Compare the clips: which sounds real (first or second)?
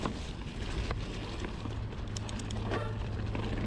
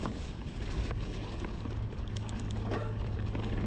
first